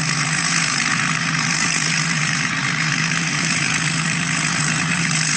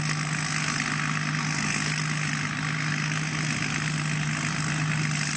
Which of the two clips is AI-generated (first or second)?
first